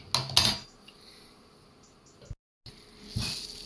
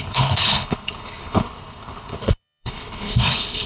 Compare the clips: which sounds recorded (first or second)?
first